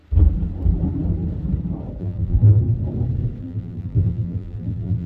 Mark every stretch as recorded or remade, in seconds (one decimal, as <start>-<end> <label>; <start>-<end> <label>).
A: 0.0-2.0 recorded; 2.0-2.6 remade; 2.6-3.4 recorded; 3.4-5.1 remade